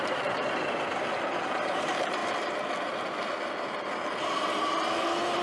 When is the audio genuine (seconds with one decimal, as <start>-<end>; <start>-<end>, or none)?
0.0-5.4